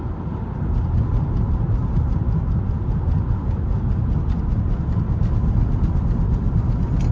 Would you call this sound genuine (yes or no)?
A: yes